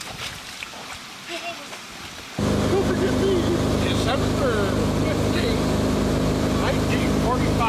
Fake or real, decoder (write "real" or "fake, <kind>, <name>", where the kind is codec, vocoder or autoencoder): real